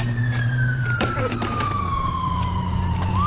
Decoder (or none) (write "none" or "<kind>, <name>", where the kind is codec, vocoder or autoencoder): vocoder, BigVGAN v2